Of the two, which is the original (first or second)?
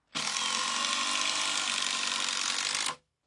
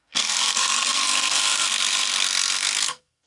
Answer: first